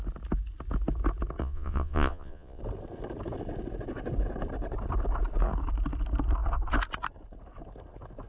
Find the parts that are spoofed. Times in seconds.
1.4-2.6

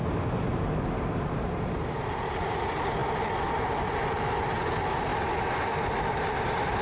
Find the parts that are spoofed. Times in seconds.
none

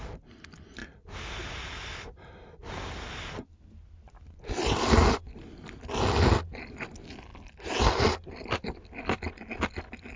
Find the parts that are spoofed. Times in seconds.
none

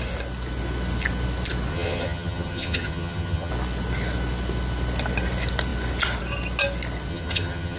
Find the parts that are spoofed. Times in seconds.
1.7-3.5; 7.1-7.8

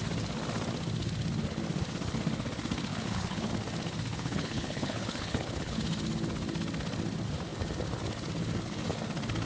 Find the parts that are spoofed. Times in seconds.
2.9-3.5; 4.1-5.8